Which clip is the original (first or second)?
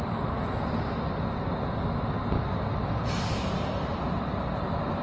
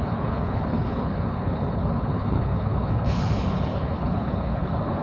first